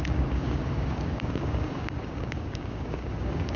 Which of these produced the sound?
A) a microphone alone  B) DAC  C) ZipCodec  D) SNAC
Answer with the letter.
B